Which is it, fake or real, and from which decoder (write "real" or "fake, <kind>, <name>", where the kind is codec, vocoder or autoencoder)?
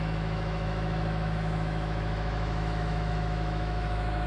fake, autoencoder, DAC-VAE